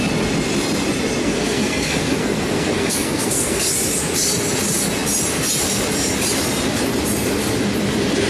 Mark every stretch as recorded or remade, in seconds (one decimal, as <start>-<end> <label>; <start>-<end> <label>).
0.0-1.2 recorded; 1.2-3.7 remade; 3.7-8.3 recorded